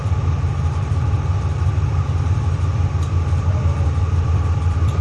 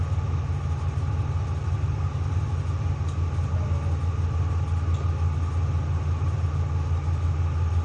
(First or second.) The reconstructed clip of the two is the first